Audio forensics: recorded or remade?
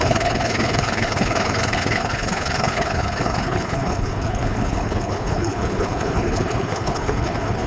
remade